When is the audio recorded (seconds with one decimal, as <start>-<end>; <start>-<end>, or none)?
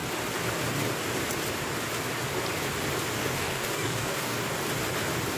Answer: 0.0-3.2; 4.4-5.4